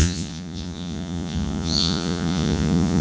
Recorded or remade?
remade